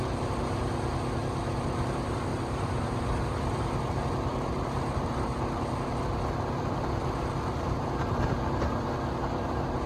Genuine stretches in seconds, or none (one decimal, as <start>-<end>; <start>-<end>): 0.0-2.3; 3.0-9.9